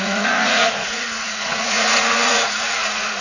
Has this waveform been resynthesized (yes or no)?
yes